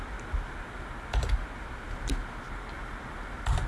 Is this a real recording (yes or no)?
yes